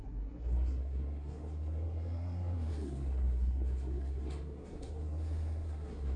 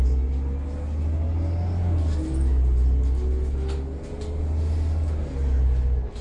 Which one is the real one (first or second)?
second